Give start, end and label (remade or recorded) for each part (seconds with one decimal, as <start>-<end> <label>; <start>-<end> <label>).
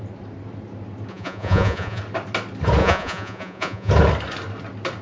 0.0-1.1 recorded; 1.1-2.0 remade; 2.0-2.8 recorded; 2.8-3.9 remade; 3.9-5.0 recorded